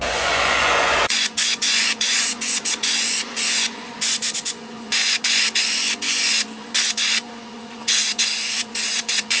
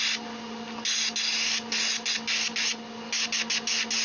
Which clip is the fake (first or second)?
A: first